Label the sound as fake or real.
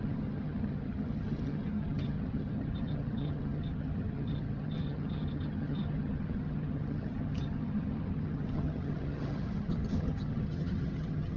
fake